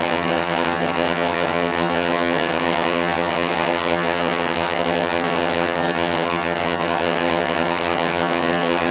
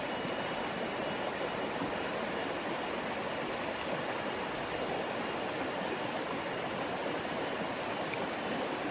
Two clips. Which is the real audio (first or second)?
second